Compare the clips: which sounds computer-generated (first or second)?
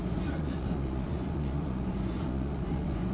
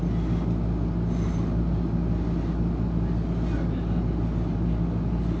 first